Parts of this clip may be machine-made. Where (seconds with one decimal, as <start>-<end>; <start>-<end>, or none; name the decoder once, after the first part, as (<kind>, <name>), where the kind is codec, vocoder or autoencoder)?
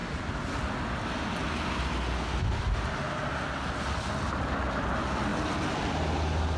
none